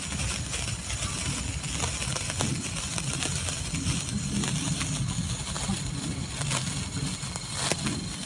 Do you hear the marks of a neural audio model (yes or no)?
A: no